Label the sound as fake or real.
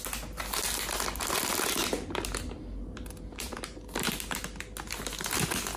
real